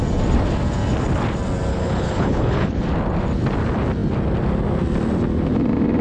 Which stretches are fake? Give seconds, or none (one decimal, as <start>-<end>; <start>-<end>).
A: 1.7-2.8